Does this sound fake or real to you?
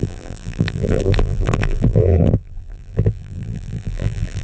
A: fake